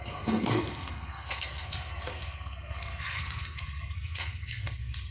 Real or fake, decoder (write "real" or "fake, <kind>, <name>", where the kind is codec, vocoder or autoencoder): fake, codec, SNAC